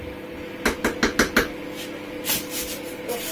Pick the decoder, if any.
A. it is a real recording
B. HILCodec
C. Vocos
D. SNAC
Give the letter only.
A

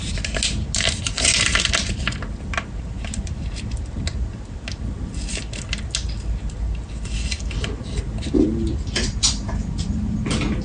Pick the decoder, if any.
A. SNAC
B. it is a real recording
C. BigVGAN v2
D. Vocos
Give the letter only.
B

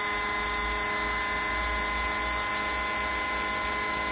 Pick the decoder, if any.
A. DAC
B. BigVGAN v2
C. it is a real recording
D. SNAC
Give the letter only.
C